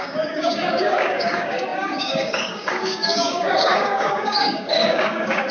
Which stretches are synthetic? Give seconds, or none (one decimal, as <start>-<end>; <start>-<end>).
0.0-5.5